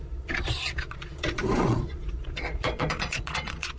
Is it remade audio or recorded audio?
remade